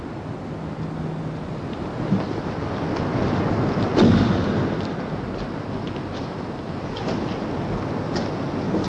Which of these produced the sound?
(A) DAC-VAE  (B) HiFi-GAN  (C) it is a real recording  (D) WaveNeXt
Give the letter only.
C